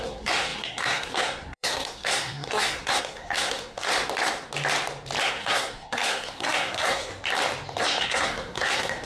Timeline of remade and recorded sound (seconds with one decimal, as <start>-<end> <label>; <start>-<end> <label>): 0.0-3.9 remade; 3.9-5.2 recorded; 5.2-7.1 remade; 7.1-7.8 recorded; 7.8-9.1 remade